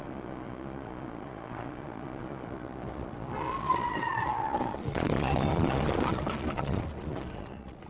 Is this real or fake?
fake